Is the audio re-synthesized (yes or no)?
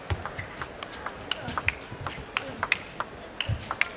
no